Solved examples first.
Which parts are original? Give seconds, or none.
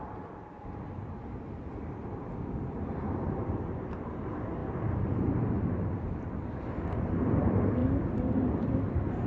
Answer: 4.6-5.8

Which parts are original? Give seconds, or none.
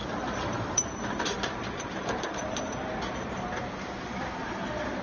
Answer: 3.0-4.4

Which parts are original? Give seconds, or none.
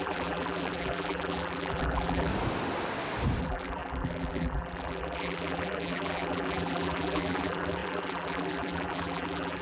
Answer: 2.3-3.4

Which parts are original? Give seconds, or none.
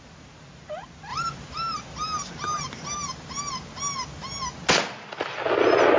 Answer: 0.0-6.0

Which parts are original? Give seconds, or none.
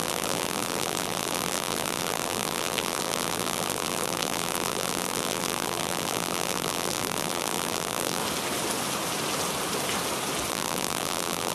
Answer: 8.2-10.5